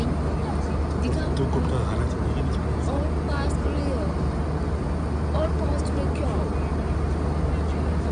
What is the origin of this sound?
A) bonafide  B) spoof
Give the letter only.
A